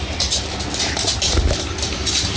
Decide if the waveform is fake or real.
real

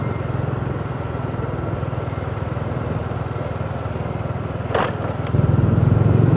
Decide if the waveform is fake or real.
real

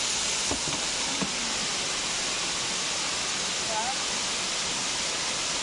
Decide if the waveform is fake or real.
real